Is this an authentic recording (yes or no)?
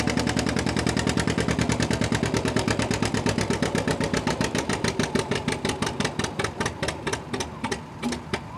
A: yes